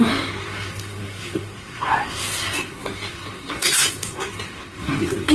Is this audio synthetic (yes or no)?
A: yes